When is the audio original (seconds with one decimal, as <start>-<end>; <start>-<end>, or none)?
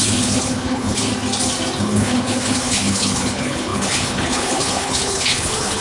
1.1-1.8